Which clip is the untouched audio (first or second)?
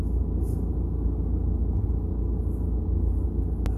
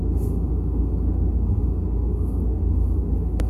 first